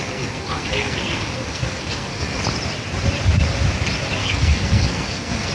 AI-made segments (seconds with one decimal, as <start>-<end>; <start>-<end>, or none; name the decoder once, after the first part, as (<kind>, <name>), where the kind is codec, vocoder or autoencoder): 0.0-2.4 (codec, SNAC); 4.2-5.5